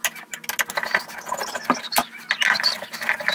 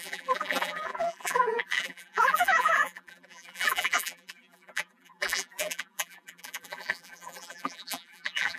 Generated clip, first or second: second